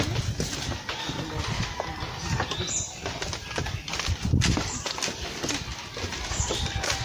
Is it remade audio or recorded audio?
recorded